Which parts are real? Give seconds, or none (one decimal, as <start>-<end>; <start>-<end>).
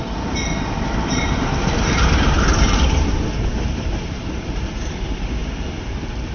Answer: 0.0-0.9; 4.7-6.3